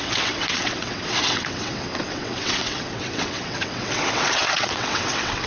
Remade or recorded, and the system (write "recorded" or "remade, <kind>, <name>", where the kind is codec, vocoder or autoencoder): remade, vocoder, WaveNeXt